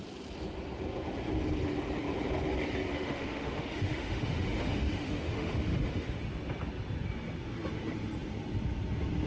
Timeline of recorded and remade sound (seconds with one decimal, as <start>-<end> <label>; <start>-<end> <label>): 0.0-2.9 recorded; 2.9-6.2 remade; 6.2-9.3 recorded